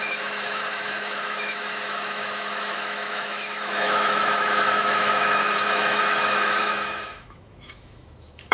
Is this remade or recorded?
remade